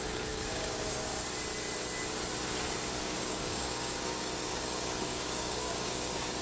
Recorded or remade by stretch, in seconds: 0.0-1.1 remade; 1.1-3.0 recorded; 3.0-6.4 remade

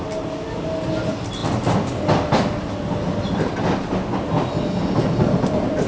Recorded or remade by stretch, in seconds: 0.0-5.9 recorded